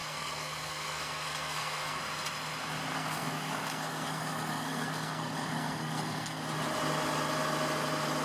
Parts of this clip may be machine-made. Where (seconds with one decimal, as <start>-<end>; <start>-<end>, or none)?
0.0-2.0; 2.9-6.4